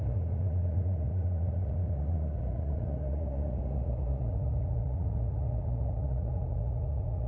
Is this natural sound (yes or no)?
no